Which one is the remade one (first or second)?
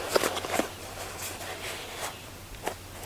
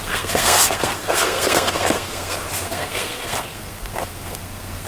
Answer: second